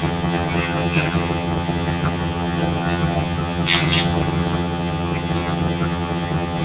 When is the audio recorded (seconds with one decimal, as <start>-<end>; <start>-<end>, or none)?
none